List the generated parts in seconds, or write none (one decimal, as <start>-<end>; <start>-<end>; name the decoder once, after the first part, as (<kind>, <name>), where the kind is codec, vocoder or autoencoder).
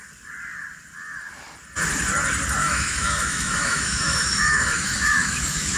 2.6-5.8 (autoencoder, DAC-VAE)